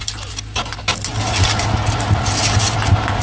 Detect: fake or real real